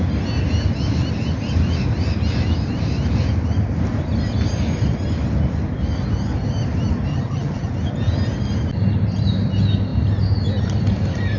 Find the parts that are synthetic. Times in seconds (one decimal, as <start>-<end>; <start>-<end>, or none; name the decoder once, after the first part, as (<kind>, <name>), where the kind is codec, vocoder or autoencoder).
7.1-7.7 (vocoder, HiFi-GAN)